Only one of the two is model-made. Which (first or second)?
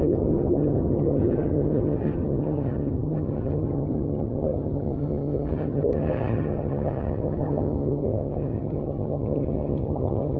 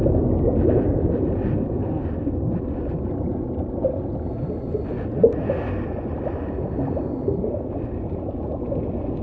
first